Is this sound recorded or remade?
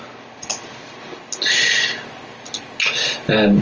recorded